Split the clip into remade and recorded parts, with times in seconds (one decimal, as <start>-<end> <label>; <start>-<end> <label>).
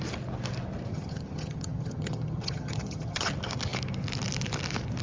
0.0-0.9 recorded; 0.9-3.3 remade; 3.3-5.0 recorded